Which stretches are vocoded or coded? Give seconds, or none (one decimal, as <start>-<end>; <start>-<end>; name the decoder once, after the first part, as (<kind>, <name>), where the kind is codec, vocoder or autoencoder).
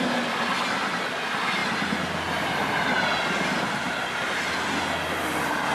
none